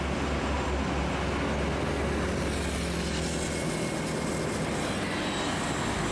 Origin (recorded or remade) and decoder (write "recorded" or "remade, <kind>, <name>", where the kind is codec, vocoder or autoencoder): recorded